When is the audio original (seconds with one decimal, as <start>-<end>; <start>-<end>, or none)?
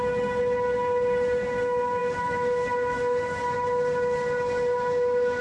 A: 0.0-2.0; 3.4-5.4